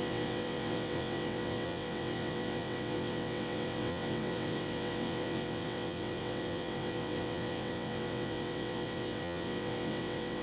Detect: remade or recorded remade